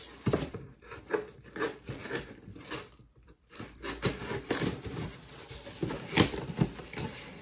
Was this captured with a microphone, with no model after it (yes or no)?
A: no